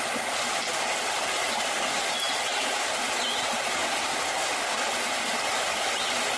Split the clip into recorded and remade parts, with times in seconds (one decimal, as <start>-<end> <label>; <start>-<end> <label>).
0.0-6.4 recorded